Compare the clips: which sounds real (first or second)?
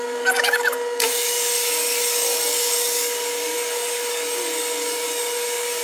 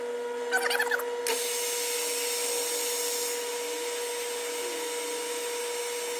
second